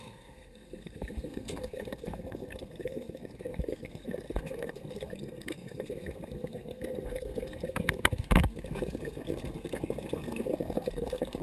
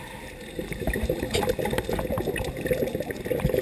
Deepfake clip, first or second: first